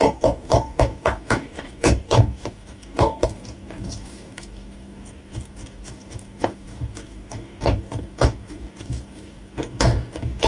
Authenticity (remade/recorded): remade